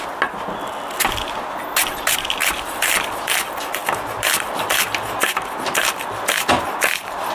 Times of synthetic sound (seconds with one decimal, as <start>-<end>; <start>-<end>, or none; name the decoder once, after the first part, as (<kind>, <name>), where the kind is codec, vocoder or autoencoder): 2.4-3.1 (vocoder, BigVGAN v2); 3.8-4.8